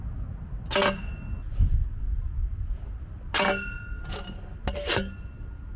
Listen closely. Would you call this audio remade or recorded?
recorded